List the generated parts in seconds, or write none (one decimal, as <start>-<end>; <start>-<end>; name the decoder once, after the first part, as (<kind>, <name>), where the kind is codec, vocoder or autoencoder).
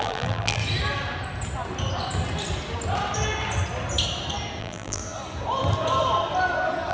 0.0-0.6 (vocoder, BigVGAN v2); 4.6-5.0